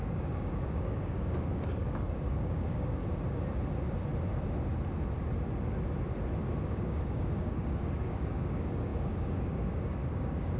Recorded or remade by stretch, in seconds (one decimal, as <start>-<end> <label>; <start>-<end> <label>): 0.0-3.0 remade; 3.0-6.6 recorded; 6.6-10.6 remade